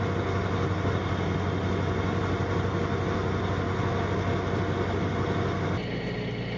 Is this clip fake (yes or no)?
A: no